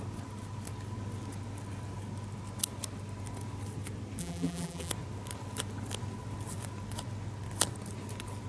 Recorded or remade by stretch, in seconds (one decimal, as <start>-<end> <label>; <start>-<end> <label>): 0.0-4.2 recorded; 4.2-4.9 remade; 4.9-8.5 recorded